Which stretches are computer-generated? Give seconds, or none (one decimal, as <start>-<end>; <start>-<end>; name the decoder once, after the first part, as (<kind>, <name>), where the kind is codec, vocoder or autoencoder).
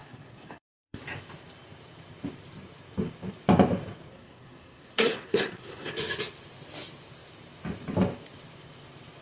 0.0-1.0 (codec, SNAC); 4.1-5.9